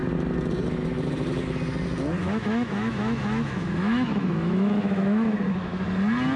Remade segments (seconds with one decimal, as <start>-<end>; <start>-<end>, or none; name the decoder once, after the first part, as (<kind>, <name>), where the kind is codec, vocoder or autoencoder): 2.2-5.8 (autoencoder, DAC-VAE)